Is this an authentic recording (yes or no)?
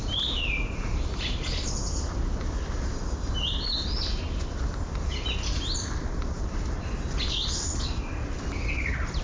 yes